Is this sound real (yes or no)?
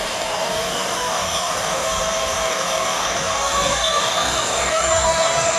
no